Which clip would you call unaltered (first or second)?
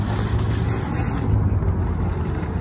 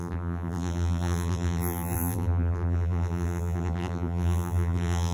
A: first